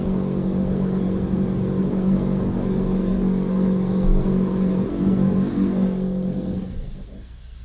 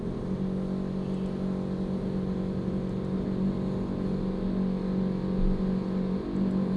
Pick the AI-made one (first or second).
first